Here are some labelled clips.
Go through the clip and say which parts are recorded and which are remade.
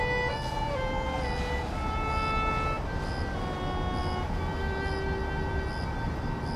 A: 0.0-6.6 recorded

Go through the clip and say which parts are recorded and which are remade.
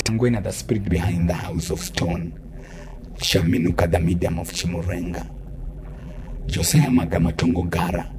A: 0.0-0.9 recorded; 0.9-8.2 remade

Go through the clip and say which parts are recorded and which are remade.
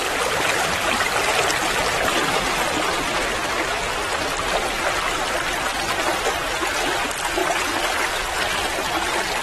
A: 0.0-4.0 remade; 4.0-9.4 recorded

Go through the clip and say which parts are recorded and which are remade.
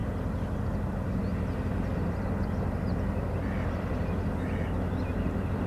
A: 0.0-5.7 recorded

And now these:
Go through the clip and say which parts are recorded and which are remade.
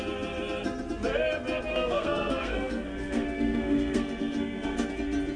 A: 0.0-1.7 recorded; 1.7-4.9 remade; 4.9-5.4 recorded